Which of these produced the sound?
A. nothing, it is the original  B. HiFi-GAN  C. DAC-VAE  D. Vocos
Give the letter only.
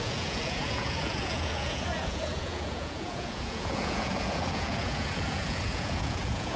D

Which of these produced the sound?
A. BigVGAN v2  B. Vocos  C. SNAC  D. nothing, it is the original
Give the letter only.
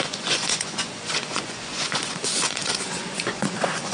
B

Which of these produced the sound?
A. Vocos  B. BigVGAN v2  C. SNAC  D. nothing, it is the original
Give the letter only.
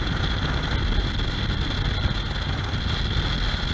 D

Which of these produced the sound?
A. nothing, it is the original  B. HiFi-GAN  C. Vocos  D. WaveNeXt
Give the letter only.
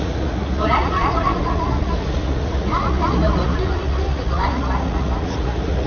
C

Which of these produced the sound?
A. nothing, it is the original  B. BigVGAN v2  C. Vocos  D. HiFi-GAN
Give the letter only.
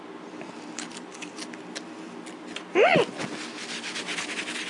A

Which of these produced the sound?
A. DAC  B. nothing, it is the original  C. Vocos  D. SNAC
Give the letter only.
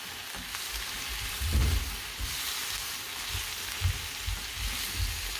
B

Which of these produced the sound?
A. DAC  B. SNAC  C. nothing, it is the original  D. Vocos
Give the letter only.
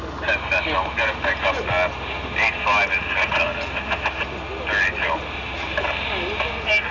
C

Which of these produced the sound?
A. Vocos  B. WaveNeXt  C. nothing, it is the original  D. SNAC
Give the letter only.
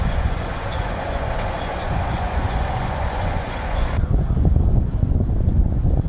A